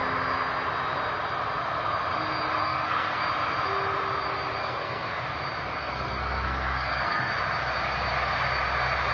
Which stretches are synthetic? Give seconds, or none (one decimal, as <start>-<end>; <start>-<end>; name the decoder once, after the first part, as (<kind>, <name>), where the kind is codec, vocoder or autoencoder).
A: 2.6-3.2 (codec, SNAC); 4.6-5.2; 5.8-7.4